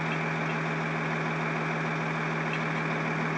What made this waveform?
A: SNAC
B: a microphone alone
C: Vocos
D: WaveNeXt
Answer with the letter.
B